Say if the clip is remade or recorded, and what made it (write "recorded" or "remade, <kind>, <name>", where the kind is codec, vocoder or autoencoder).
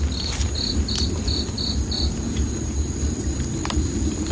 recorded